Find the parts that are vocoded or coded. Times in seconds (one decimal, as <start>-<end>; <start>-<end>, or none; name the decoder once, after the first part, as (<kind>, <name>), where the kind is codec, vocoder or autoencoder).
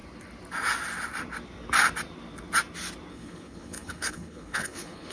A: 3.1-5.1 (codec, HILCodec)